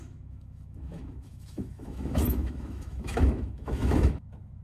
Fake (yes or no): yes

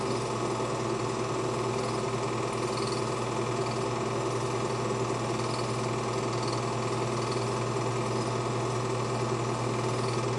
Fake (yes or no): no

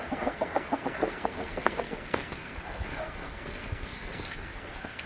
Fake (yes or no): yes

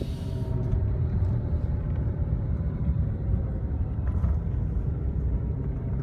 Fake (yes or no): yes